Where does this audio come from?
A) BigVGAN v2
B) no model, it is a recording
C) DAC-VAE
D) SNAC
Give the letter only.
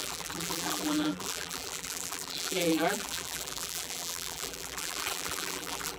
A